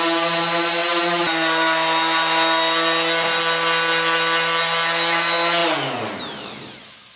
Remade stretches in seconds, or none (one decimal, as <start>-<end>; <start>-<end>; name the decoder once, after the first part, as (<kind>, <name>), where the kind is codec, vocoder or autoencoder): none